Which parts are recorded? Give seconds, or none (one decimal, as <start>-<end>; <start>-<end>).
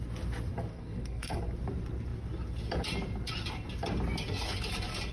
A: 0.0-0.7; 1.4-5.1